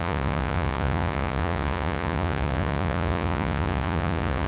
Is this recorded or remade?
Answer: remade